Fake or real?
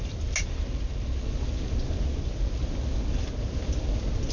real